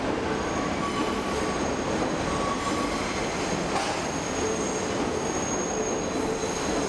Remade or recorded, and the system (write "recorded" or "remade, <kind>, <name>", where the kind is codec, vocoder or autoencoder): recorded